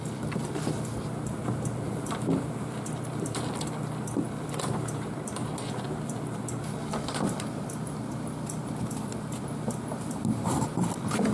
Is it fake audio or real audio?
fake